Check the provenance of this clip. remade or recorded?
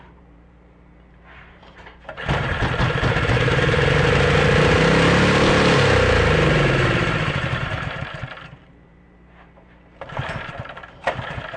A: remade